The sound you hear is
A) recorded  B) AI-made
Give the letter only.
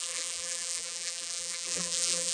B